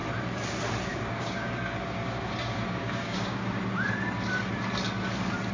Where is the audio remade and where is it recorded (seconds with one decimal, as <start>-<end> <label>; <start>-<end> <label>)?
0.0-0.9 recorded; 0.9-3.6 remade; 3.6-5.5 recorded

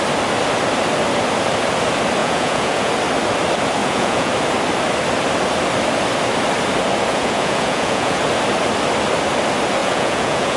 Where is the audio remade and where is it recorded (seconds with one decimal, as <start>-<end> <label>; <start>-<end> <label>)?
0.0-2.2 recorded; 2.2-2.9 remade; 2.9-3.8 recorded; 3.8-4.3 remade; 4.3-7.1 recorded; 7.1-8.2 remade; 8.2-9.8 recorded; 9.8-10.6 remade

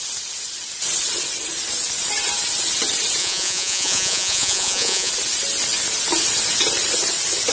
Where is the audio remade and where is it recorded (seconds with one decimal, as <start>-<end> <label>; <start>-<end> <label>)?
0.0-3.2 recorded; 3.2-5.1 remade; 5.1-7.5 recorded

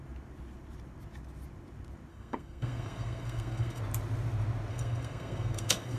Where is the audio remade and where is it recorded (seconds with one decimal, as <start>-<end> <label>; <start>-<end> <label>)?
0.0-2.1 recorded; 2.1-3.8 remade; 3.8-4.7 recorded; 4.7-6.0 remade

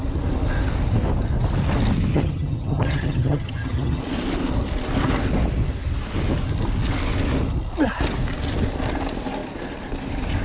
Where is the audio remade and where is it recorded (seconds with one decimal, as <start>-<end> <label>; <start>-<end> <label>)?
0.0-2.1 recorded; 2.1-4.0 remade; 4.0-10.4 recorded

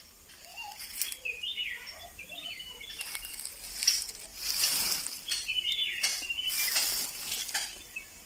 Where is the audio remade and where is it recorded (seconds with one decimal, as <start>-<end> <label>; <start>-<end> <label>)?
0.0-0.5 recorded; 0.5-3.2 remade; 3.2-4.3 recorded; 4.3-5.1 remade; 5.1-6.1 recorded; 6.1-6.7 remade; 6.7-8.3 recorded

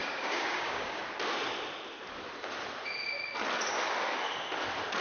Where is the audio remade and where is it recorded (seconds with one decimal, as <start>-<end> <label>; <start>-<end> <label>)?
0.0-1.0 remade; 1.0-5.0 recorded

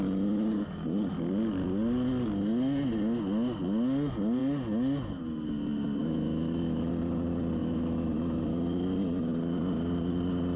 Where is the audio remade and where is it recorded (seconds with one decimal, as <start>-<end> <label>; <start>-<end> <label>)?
0.0-6.0 recorded; 6.0-6.9 remade; 6.9-7.6 recorded; 7.6-8.4 remade; 8.4-10.6 recorded